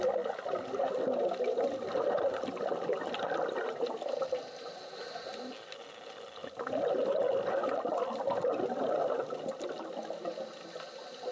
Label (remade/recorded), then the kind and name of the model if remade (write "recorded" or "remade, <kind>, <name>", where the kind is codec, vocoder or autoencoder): recorded